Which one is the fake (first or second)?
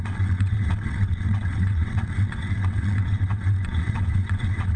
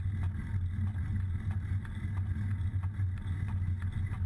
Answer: first